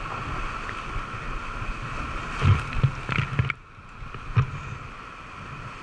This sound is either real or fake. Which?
real